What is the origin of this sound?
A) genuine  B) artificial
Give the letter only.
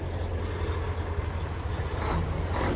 A